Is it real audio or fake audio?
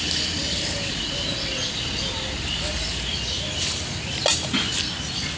real